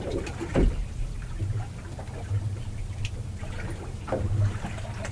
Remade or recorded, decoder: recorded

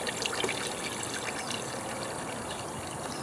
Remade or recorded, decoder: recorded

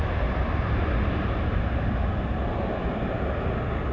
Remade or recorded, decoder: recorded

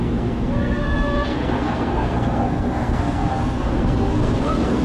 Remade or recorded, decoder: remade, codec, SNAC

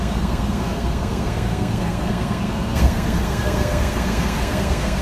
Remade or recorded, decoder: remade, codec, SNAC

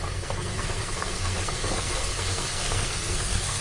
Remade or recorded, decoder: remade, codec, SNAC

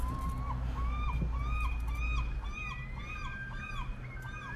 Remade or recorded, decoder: recorded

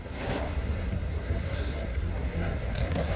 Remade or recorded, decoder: remade, codec, SNAC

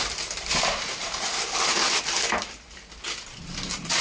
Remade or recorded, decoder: recorded